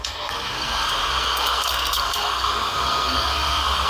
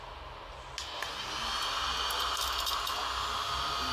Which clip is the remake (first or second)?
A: first